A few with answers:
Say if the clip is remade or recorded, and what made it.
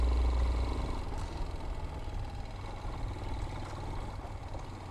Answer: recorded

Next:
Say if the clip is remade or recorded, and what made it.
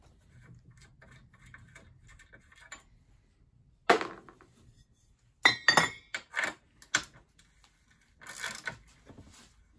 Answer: recorded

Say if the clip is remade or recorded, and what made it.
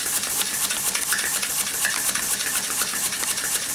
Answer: recorded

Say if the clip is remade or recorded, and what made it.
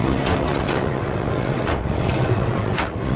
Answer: remade, vocoder, WaveNeXt